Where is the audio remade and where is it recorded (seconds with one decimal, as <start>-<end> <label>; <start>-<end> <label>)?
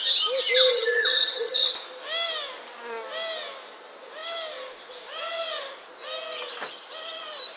0.0-0.7 recorded; 0.7-1.7 remade; 1.7-7.6 recorded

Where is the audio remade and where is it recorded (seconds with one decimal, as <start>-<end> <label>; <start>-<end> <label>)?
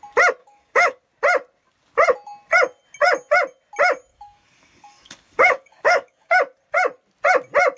0.0-0.4 recorded; 0.4-1.0 remade; 1.0-4.1 recorded; 4.1-6.3 remade; 6.3-7.8 recorded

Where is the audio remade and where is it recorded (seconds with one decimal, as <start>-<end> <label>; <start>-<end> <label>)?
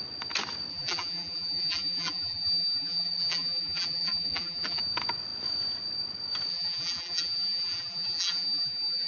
0.0-0.7 recorded; 0.7-4.8 remade; 4.8-6.5 recorded; 6.5-9.1 remade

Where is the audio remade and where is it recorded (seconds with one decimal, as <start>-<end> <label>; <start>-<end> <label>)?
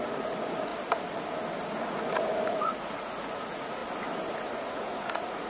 0.0-0.7 remade; 0.7-1.7 recorded; 1.7-3.8 remade; 3.8-4.3 recorded; 4.3-5.5 remade